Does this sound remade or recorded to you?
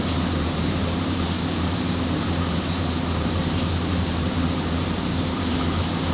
remade